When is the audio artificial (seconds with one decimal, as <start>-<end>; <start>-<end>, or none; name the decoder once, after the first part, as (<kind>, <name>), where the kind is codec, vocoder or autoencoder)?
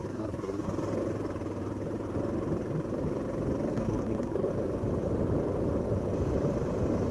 0.0-0.7 (codec, SNAC); 3.7-4.5